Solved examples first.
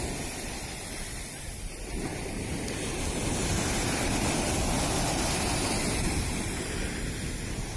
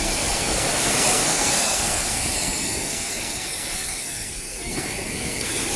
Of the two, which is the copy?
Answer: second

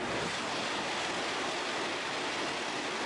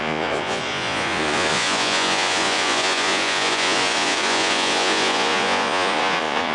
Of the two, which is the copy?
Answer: second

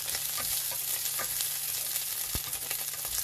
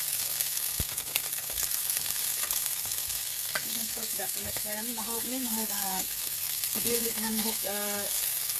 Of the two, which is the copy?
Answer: second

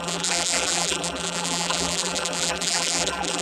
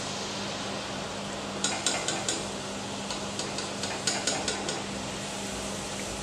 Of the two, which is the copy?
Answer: first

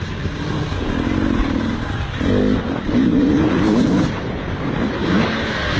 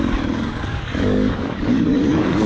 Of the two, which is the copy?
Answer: second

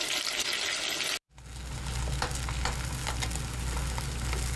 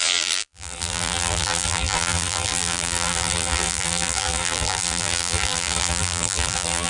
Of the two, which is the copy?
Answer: second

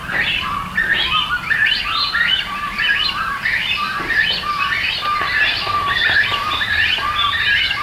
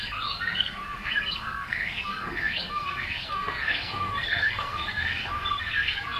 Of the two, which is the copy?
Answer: second